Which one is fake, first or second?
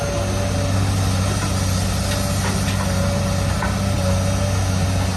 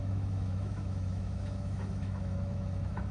second